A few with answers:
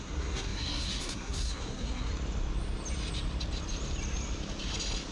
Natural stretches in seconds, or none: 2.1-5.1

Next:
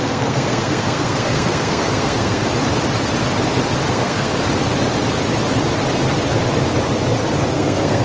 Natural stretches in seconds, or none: 2.4-3.9; 4.3-7.5

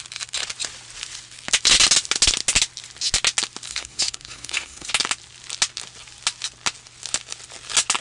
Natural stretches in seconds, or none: 0.0-3.7; 4.9-8.0

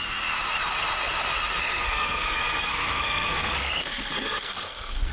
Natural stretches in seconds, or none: 0.0-1.6